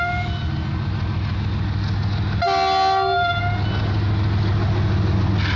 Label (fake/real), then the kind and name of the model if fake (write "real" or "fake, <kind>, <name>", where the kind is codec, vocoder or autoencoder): real